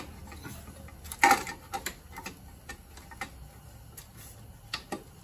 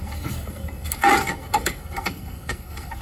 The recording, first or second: first